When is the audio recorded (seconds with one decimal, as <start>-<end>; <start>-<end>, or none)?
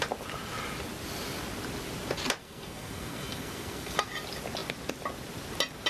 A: 0.0-2.4; 4.1-5.9